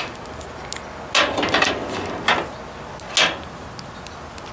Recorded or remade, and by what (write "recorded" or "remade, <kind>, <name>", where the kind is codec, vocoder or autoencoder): recorded